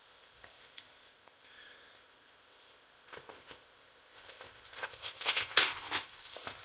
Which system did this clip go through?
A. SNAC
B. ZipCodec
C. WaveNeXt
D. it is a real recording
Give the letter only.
B